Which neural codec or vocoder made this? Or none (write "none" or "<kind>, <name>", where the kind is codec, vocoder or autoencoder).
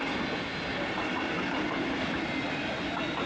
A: none